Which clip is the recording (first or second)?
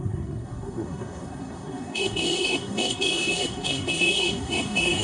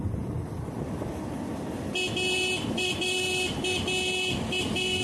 second